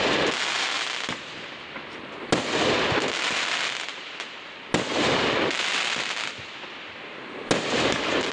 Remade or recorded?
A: recorded